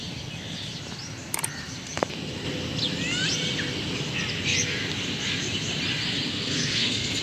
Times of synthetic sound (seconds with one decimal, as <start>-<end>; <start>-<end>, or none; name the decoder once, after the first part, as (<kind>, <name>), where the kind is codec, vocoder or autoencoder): 6.3-7.2 (codec, SNAC)